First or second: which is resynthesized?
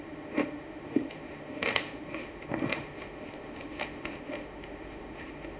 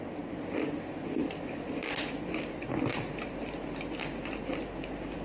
first